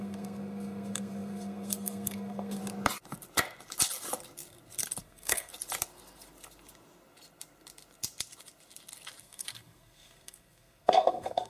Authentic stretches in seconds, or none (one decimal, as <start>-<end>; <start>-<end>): 2.6-5.0; 5.5-9.2